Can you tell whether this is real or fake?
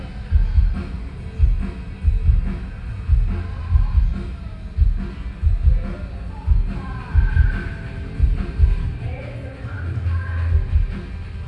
real